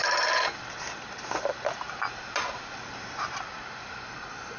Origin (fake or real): real